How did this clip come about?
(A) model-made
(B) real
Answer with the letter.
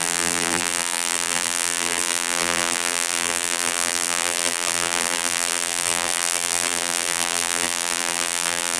A